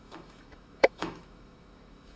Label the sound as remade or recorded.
remade